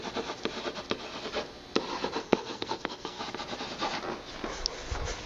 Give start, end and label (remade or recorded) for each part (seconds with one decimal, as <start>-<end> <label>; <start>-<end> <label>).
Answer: 0.0-2.2 recorded; 2.2-3.2 remade; 3.2-5.3 recorded